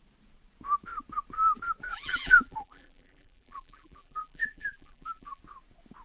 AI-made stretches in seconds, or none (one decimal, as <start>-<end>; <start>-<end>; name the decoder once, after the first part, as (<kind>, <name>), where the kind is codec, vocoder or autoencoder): 1.9-5.4 (vocoder, BigVGAN v2)